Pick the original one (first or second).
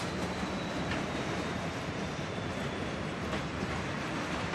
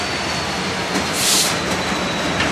second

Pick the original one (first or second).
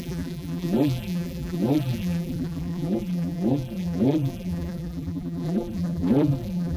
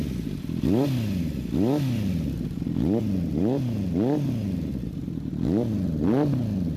second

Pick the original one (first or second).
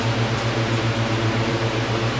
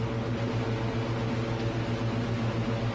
second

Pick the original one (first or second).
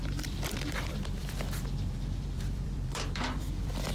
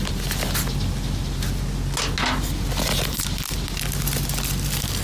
second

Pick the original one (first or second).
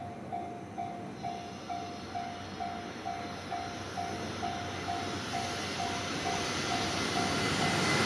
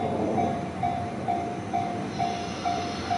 first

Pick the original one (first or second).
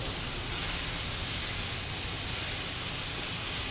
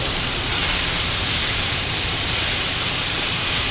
first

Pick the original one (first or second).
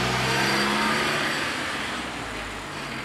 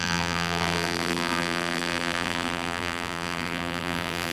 first